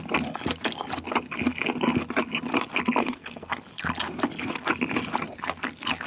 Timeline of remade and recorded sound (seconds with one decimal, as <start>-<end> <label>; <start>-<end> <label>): 0.0-3.0 recorded; 3.0-3.6 remade; 3.6-6.1 recorded